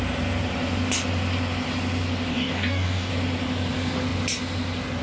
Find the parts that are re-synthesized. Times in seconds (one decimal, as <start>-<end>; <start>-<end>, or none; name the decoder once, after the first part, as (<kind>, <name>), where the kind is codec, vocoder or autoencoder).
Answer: 2.3-3.1 (codec, DAC)